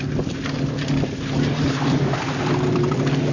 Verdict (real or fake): fake